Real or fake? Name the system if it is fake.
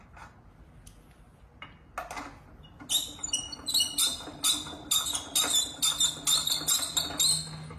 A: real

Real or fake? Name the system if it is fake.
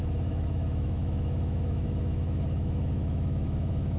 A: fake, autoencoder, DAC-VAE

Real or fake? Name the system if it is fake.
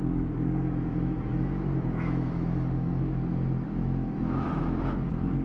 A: fake, autoencoder, DAC-VAE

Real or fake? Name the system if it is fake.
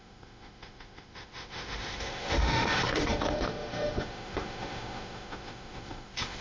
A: fake, autoencoder, DAC-VAE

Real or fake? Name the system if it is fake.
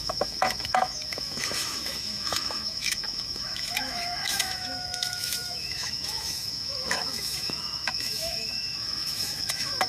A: fake, autoencoder, DAC-VAE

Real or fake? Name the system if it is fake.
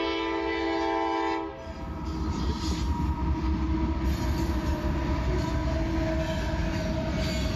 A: real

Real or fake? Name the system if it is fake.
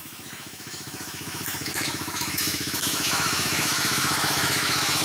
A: fake, autoencoder, DAC-VAE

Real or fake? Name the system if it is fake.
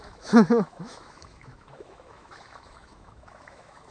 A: fake, autoencoder, DAC-VAE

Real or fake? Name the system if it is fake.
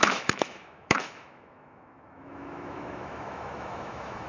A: fake, autoencoder, DAC-VAE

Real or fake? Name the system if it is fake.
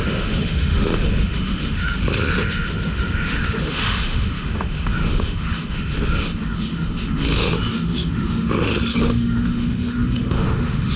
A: fake, autoencoder, DAC-VAE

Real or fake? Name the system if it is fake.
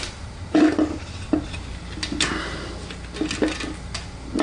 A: real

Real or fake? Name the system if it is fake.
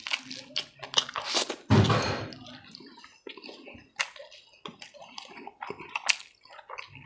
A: real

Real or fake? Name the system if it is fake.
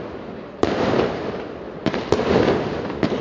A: real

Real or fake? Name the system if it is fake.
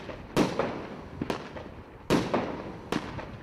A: real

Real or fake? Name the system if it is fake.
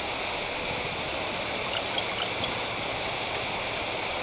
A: real